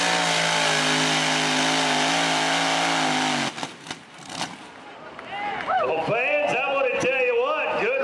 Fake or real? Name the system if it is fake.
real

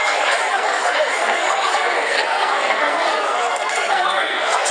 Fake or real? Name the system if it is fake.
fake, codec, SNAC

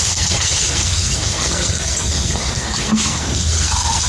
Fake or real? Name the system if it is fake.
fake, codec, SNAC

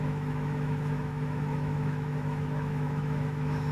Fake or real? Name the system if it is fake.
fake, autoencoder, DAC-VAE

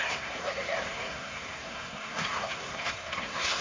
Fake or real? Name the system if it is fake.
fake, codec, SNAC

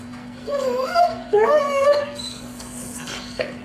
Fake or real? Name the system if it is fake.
fake, codec, SNAC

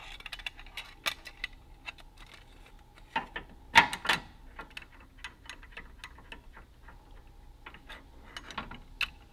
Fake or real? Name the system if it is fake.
real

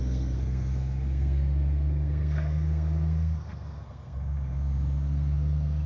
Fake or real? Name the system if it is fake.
fake, codec, SNAC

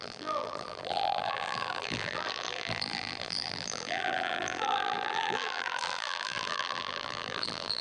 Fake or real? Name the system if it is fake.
fake, vocoder, BigVGAN v2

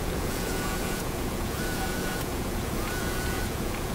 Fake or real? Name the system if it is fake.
fake, vocoder, Vocos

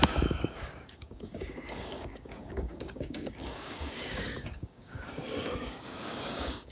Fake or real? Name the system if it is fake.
fake, codec, DAC